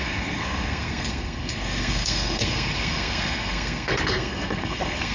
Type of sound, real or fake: fake